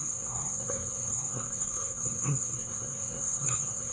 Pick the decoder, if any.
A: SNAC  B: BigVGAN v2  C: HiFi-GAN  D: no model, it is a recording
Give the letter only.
A